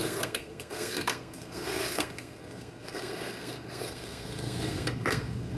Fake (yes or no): yes